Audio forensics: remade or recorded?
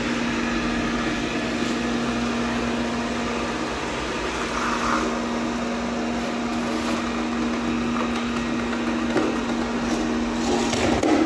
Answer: recorded